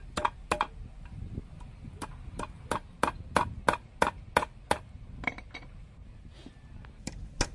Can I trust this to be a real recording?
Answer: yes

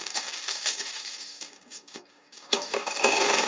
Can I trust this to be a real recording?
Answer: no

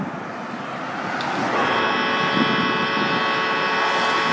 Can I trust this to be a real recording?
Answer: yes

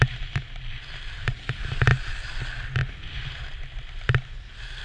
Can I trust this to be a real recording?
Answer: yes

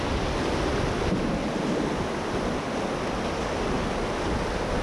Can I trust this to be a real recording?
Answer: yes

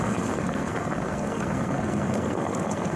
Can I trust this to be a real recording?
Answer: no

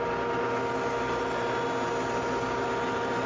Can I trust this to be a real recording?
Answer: yes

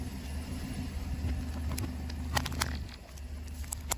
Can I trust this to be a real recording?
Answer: yes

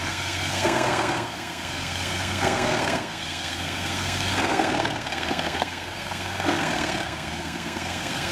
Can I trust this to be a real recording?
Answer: no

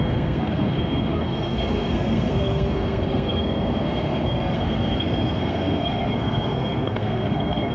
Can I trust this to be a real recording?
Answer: no